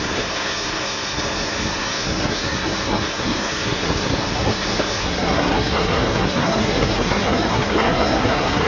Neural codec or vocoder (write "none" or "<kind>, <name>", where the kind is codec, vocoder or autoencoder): codec, SNAC